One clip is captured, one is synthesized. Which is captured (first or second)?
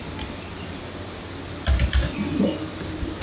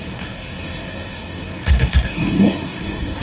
first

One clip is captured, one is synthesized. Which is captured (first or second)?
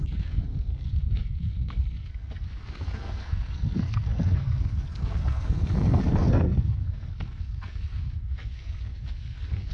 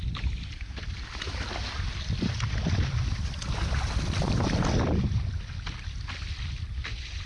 second